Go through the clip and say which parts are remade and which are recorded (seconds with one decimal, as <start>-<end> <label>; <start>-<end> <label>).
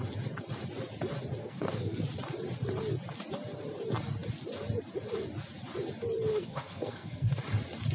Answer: 0.0-1.4 recorded; 1.4-2.0 remade; 2.0-6.3 recorded; 6.3-7.3 remade; 7.3-7.9 recorded